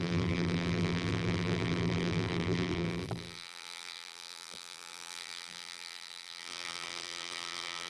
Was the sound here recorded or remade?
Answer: remade